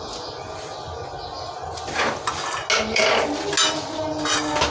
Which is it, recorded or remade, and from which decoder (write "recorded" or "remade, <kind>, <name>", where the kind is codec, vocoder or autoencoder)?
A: recorded